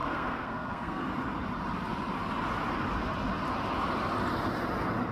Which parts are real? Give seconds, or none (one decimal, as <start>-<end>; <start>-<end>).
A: 1.0-5.1